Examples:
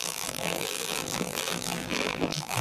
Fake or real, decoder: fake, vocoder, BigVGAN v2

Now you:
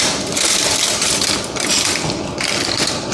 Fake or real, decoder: real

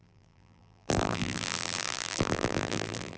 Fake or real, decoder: fake, vocoder, BigVGAN v2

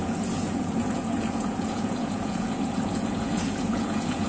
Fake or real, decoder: fake, vocoder, Vocos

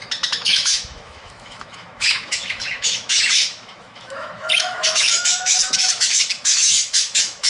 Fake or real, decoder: fake, autoencoder, DAC-VAE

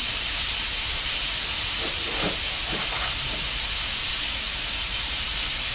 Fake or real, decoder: fake, vocoder, BigVGAN v2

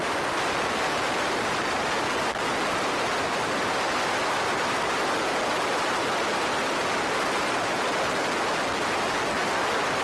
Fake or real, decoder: real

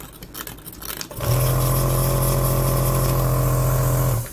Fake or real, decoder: real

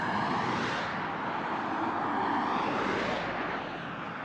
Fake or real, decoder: real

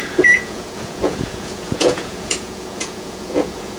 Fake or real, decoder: fake, vocoder, Vocos